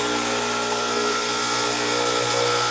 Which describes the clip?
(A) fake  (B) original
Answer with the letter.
B